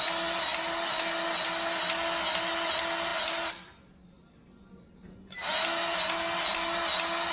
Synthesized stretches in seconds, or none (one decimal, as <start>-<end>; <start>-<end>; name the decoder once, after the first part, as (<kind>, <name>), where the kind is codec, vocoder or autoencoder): none